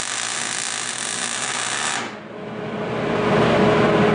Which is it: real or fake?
real